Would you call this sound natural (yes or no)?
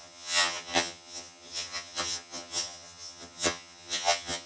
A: no